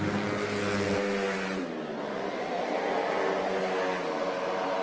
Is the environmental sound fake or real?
real